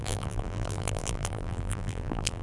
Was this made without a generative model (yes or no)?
no